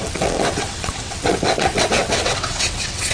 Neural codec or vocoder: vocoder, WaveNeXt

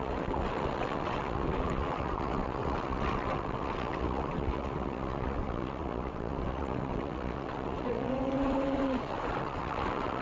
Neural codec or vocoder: vocoder, WaveNeXt